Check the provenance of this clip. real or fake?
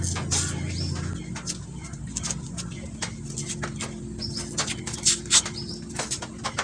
real